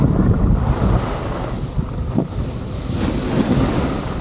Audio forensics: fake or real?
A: real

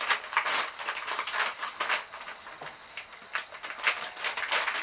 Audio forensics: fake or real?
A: real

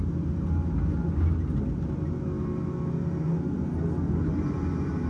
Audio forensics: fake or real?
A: real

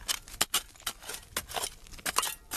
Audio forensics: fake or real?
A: real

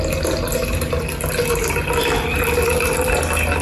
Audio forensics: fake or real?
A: real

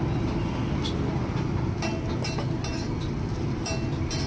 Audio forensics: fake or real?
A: real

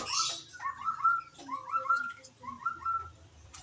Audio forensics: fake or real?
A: real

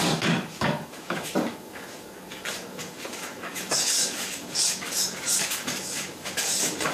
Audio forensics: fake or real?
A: fake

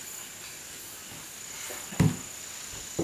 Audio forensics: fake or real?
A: real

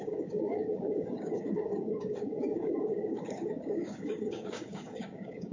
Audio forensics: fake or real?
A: fake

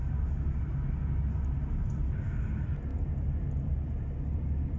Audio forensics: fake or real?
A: real